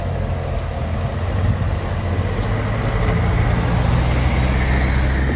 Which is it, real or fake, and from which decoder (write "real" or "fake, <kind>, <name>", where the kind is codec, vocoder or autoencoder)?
real